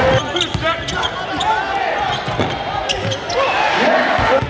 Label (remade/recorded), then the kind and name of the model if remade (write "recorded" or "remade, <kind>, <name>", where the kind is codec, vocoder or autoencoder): recorded